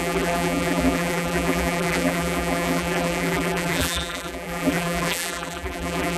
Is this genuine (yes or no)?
no